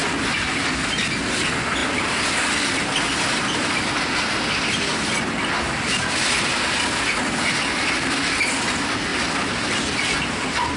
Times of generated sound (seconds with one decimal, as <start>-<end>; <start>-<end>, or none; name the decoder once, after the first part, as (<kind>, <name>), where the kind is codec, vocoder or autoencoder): 1.8-4.0 (vocoder, BigVGAN v2); 9.1-9.8